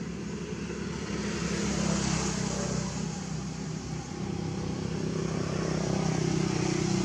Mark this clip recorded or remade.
recorded